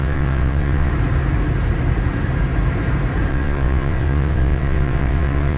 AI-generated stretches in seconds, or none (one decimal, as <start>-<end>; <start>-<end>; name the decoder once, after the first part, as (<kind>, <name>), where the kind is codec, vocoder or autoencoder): 0.0-0.9 (vocoder, WaveNeXt); 3.3-5.6